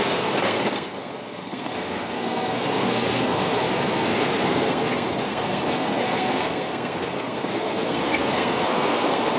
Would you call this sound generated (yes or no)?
yes